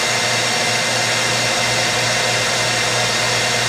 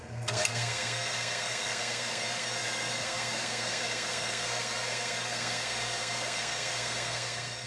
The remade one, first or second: second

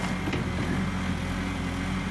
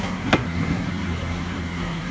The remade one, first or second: second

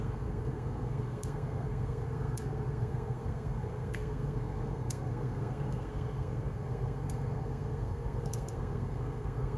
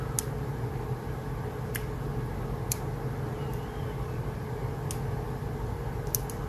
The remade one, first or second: first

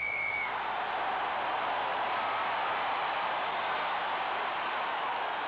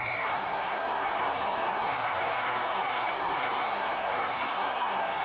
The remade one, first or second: second